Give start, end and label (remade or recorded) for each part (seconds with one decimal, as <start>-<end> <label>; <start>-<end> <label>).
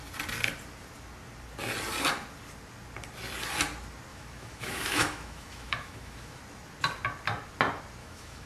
0.0-4.1 recorded; 4.1-6.4 remade; 6.4-8.0 recorded; 8.0-8.5 remade